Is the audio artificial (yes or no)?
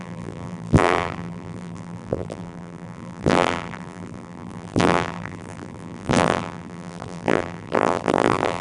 yes